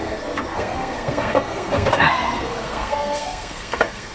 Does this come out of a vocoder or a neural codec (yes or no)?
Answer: yes